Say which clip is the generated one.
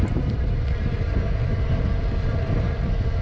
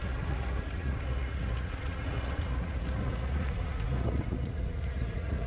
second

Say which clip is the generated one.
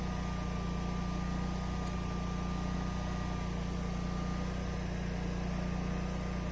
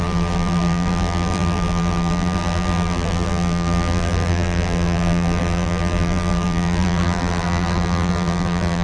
second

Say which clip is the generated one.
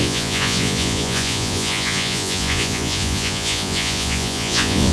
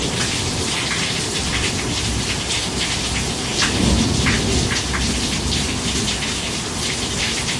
first